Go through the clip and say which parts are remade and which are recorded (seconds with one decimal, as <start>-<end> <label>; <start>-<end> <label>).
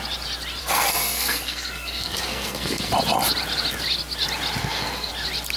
0.0-0.6 recorded; 0.6-2.9 remade; 2.9-4.6 recorded; 4.6-5.1 remade; 5.1-5.6 recorded